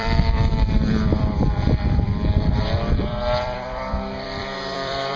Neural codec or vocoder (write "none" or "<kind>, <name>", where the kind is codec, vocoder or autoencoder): vocoder, BigVGAN v2